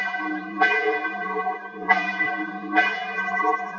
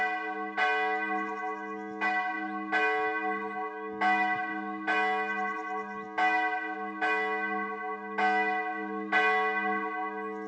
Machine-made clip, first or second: first